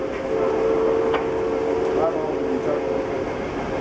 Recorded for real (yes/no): yes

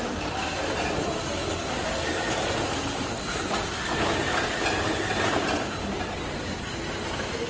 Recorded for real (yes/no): yes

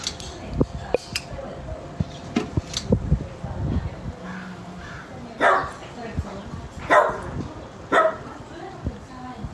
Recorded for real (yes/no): yes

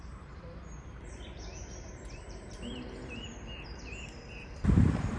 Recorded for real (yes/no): no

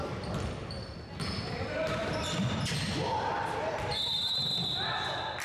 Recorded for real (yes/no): no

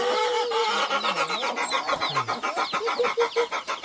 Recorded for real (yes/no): yes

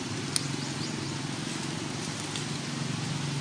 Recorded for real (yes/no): yes